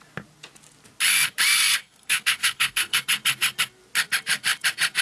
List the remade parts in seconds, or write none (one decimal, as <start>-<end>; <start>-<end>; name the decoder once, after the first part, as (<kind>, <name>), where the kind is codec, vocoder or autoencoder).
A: 1.8-3.0 (codec, SNAC)